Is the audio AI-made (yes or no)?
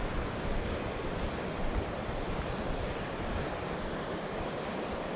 yes